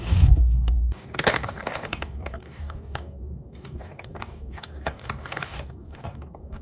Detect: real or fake fake